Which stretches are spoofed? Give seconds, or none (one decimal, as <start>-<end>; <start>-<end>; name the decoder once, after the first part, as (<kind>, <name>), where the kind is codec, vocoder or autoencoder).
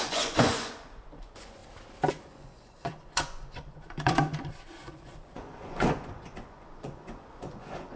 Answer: 0.0-1.6 (vocoder, Vocos); 2.1-4.3; 4.8-8.0